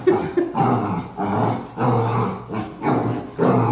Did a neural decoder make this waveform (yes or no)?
no